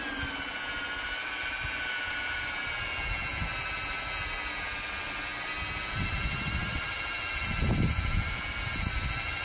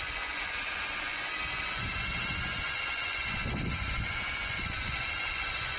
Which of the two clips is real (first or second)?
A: first